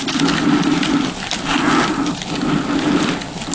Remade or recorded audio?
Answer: recorded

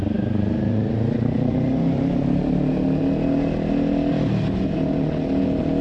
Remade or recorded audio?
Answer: recorded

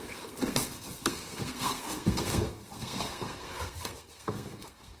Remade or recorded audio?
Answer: remade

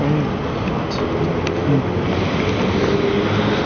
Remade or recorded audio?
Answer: recorded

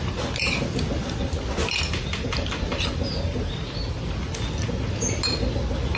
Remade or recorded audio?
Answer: recorded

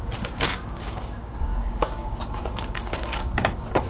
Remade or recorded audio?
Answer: remade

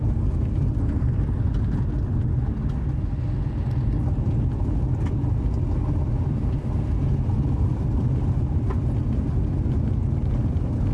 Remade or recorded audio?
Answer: recorded